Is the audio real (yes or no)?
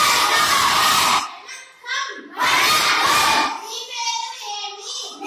yes